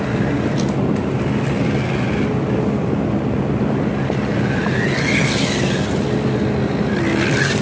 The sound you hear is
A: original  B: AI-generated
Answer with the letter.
A